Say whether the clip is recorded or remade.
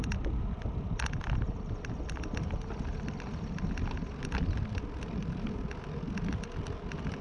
recorded